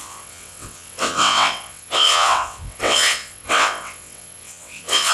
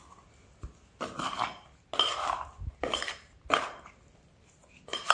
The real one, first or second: second